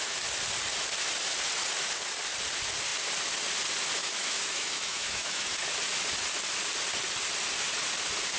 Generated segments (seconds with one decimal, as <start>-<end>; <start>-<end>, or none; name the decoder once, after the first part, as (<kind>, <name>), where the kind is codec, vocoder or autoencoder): 4.0-5.5 (autoencoder, DAC-VAE)